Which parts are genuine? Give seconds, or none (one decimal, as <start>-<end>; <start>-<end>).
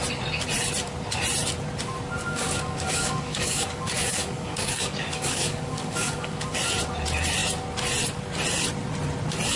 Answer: 0.0-2.2; 6.6-9.6